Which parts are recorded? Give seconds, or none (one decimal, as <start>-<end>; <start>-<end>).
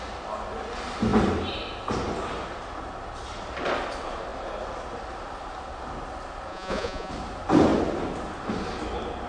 0.0-6.5; 7.1-9.3